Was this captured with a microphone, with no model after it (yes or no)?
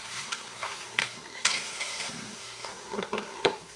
no